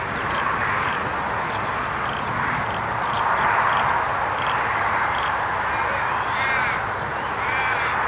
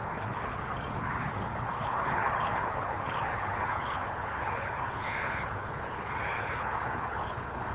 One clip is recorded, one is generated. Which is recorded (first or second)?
first